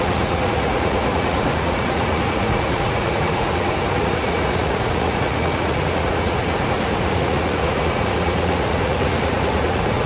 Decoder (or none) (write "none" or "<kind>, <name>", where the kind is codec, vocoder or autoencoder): vocoder, Vocos